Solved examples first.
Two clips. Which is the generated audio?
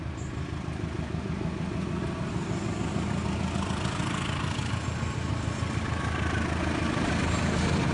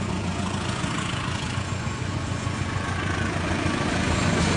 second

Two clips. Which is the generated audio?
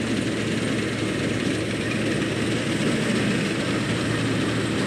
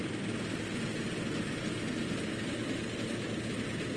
second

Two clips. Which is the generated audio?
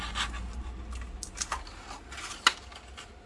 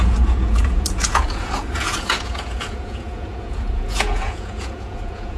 second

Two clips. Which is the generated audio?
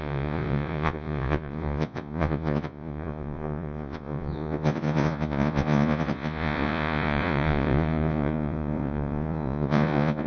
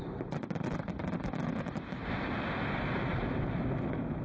first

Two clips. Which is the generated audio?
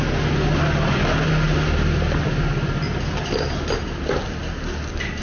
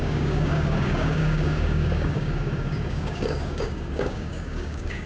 second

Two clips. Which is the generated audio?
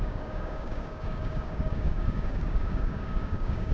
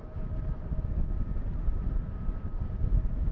first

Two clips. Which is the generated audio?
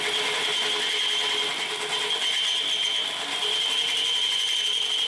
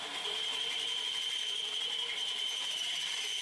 second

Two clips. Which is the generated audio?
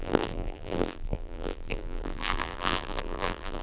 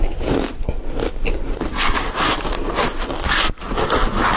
first